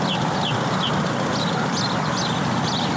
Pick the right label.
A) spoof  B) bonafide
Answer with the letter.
B